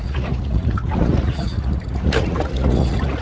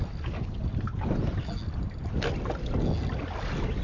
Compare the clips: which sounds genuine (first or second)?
second